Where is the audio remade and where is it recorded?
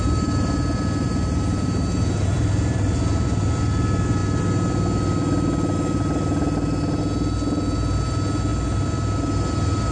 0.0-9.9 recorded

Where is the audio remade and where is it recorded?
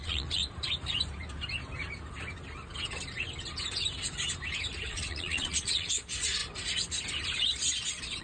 0.0-0.4 remade; 0.4-4.9 recorded; 4.9-6.4 remade; 6.4-7.4 recorded; 7.4-8.2 remade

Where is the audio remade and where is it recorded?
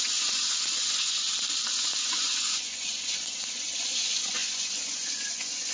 0.0-1.3 remade; 1.3-1.8 recorded; 1.8-5.7 remade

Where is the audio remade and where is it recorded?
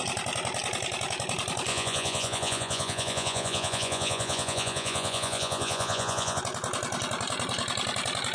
0.0-1.7 recorded; 1.7-6.4 remade; 6.4-8.3 recorded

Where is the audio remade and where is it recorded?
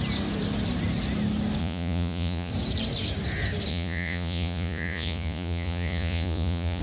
0.0-1.6 recorded; 1.6-2.5 remade; 2.5-3.7 recorded; 3.7-6.8 remade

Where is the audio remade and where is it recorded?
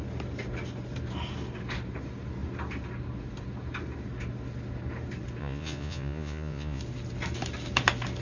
0.0-5.4 recorded; 5.4-6.8 remade; 6.8-8.2 recorded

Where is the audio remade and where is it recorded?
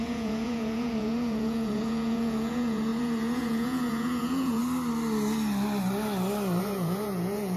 0.0-4.6 remade; 4.6-6.6 recorded; 6.6-7.6 remade